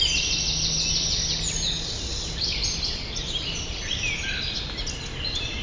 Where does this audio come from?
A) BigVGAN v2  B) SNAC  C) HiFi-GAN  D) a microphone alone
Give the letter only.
D